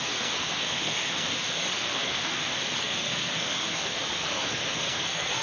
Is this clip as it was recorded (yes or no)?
no